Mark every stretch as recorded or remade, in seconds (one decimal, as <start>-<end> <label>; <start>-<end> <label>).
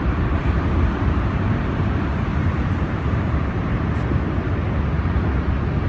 0.0-0.4 recorded; 0.4-1.6 remade; 1.6-2.3 recorded; 2.3-4.5 remade; 4.5-5.9 recorded